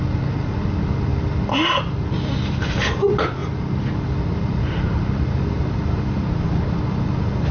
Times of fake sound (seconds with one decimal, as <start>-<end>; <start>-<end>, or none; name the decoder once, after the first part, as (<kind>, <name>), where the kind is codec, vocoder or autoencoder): none